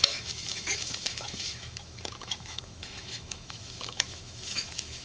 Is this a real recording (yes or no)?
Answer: no